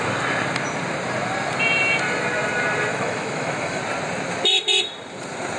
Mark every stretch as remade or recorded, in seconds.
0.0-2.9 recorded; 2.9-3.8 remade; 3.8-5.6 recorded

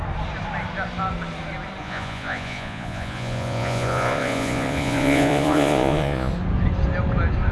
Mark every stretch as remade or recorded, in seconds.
0.0-1.8 recorded; 1.8-6.3 remade; 6.3-7.5 recorded